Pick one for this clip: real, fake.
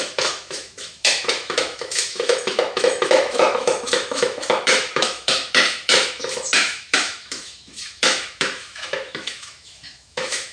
fake